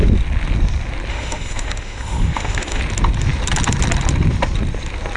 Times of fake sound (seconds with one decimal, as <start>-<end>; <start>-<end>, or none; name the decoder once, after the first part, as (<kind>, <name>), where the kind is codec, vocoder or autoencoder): 1.1-2.8 (autoencoder, DAC-VAE)